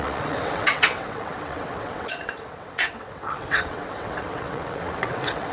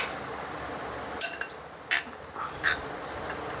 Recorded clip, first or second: second